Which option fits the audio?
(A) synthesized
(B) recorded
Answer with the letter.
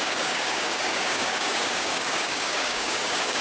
A